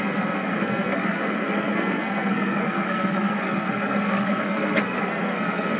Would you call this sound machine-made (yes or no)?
yes